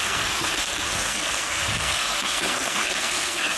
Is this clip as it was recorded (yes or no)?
no